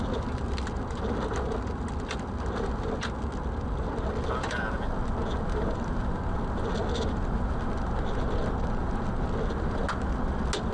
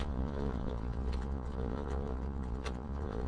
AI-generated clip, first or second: second